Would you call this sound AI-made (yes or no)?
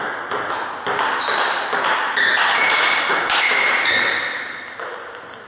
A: no